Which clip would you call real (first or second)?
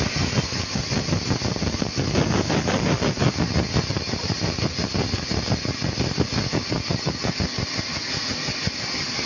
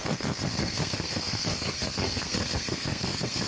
first